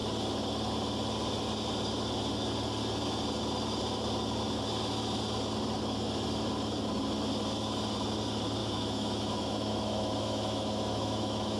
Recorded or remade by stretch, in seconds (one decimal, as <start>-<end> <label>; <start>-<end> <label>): 0.0-8.6 recorded; 8.6-11.6 remade